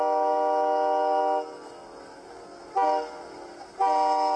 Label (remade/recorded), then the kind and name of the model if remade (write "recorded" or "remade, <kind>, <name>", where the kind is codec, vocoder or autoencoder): recorded